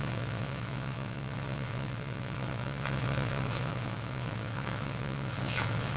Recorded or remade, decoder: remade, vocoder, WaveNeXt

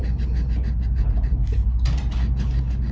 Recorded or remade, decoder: recorded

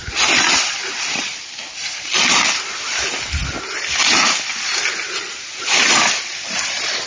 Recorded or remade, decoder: recorded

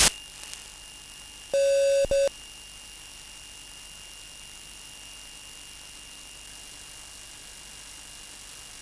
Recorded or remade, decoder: recorded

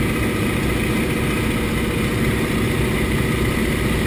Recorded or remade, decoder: recorded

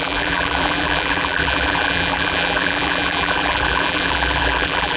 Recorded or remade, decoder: remade, vocoder, BigVGAN v2